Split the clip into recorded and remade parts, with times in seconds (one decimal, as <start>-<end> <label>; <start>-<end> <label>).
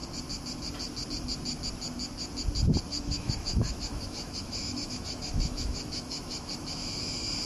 0.0-2.9 recorded; 2.9-7.4 remade